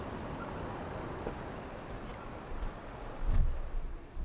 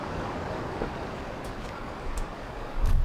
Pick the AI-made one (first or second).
second